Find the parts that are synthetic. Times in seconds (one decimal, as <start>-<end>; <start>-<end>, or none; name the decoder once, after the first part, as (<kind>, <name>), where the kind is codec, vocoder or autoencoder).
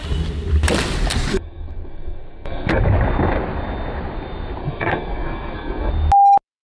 1.3-2.8 (codec, SNAC); 4.6-5.9